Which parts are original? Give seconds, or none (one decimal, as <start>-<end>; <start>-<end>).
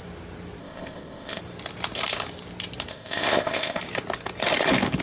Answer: 0.0-0.6; 1.4-2.9; 3.8-5.0